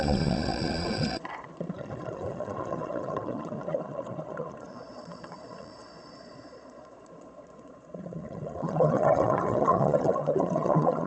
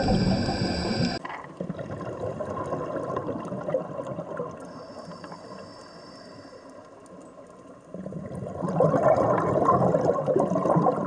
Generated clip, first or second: first